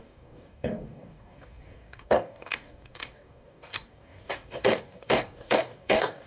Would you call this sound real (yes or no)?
no